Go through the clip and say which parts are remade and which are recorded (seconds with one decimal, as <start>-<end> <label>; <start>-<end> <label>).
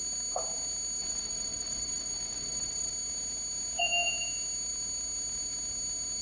0.0-1.0 recorded; 1.0-2.9 remade; 2.9-6.2 recorded